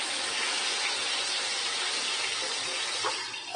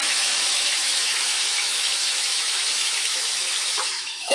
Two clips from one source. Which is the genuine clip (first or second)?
first